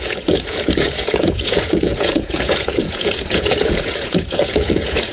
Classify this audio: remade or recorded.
remade